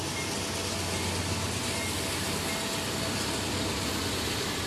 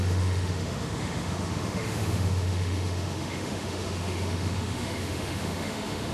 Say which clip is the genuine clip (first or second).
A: first